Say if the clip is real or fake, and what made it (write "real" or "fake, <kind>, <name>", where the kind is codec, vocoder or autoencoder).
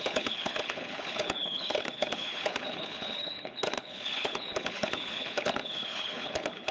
fake, codec, HILCodec